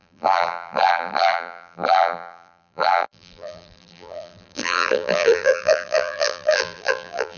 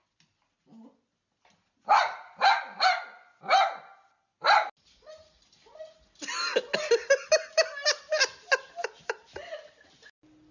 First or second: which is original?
second